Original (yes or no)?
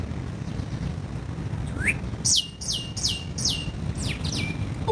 yes